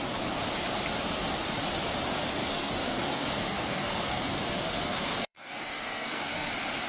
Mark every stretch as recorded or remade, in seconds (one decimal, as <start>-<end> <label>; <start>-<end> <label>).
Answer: 0.0-2.4 recorded; 2.4-6.5 remade; 6.5-6.9 recorded